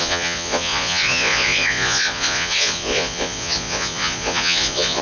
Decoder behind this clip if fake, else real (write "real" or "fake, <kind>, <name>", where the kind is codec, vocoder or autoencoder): fake, vocoder, Vocos